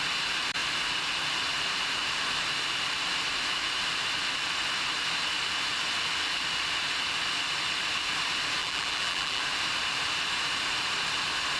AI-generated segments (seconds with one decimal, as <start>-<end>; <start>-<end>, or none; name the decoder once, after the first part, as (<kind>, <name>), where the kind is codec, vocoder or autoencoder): 8.6-9.4 (vocoder, BigVGAN v2)